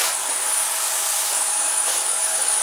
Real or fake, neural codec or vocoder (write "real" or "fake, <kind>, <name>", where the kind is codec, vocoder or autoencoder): fake, codec, DAC